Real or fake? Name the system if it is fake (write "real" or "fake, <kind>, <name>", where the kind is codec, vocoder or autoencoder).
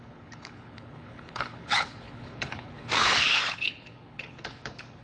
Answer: fake, codec, HILCodec